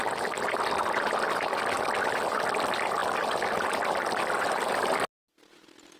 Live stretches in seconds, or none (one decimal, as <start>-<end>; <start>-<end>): 0.8-6.0